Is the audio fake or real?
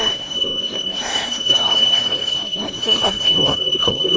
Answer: fake